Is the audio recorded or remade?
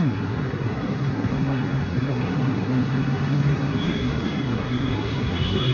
remade